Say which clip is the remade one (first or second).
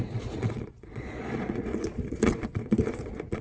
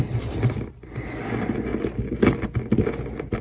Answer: first